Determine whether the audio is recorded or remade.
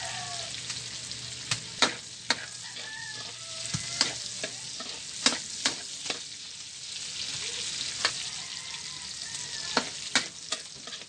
recorded